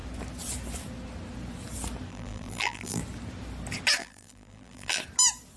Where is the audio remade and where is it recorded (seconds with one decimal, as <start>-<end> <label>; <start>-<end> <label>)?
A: 0.0-2.1 recorded; 2.1-3.0 remade; 3.0-4.0 recorded; 4.0-5.0 remade; 5.0-5.6 recorded